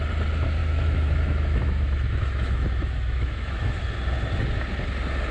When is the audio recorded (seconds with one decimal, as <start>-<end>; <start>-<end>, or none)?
0.0-0.6; 3.8-5.3